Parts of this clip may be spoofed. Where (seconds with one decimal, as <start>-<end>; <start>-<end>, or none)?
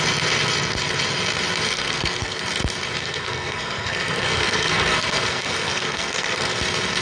1.7-2.4; 3.0-6.6